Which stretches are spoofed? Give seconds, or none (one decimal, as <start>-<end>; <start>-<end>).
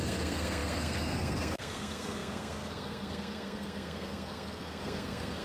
0.0-5.4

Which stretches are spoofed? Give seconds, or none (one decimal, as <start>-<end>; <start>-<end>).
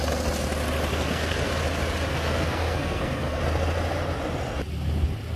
0.9-1.5; 2.1-3.4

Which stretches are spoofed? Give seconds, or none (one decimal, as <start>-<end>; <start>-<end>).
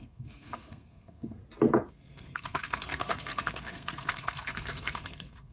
0.0-1.4; 1.9-5.5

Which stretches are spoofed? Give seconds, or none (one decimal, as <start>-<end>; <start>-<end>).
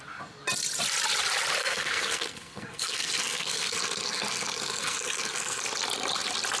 1.6-5.6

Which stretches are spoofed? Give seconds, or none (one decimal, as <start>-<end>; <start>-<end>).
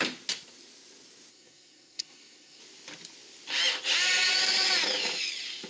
1.3-2.6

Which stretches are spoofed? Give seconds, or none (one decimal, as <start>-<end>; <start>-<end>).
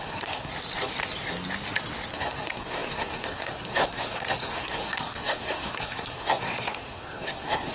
0.0-0.5; 2.1-7.7